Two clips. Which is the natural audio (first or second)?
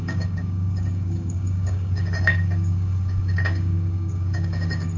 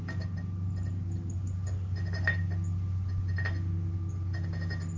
second